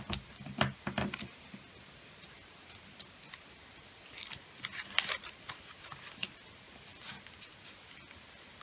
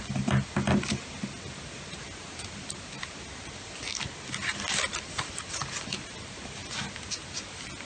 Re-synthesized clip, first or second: first